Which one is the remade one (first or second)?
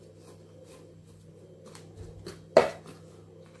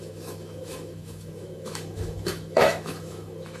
second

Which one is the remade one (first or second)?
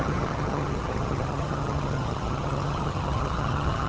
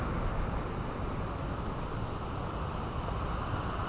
first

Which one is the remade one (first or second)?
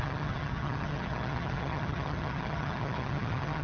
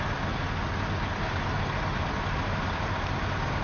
first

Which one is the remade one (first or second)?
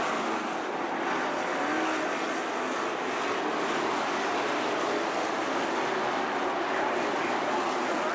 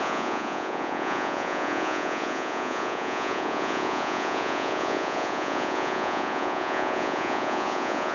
second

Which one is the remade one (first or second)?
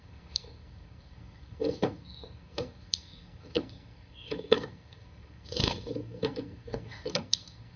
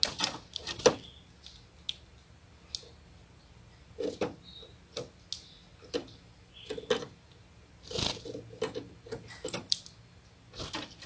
first